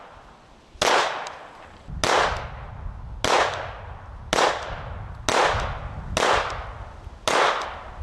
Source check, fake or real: real